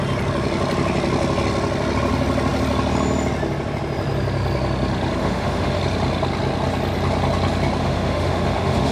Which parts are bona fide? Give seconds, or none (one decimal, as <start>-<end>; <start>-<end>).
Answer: 0.0-5.2; 5.8-7.8